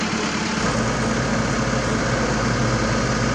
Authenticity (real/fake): real